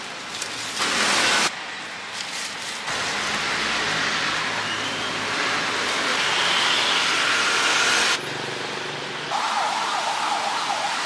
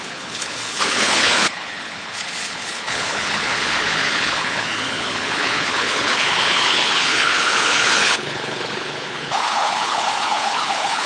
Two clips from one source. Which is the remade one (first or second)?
second